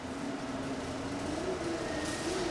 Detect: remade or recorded recorded